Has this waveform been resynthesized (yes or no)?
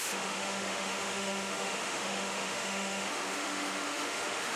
yes